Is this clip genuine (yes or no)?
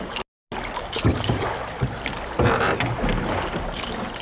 yes